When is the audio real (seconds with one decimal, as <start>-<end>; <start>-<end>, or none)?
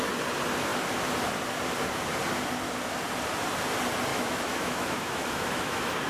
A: 0.0-4.1